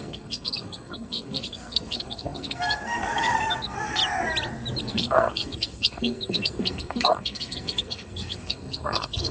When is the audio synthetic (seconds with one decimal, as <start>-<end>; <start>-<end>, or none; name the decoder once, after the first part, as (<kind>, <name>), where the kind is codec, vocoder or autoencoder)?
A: 0.0-4.0 (codec, SNAC); 4.8-9.3